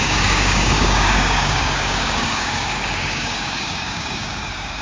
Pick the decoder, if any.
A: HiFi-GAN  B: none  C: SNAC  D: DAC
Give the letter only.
D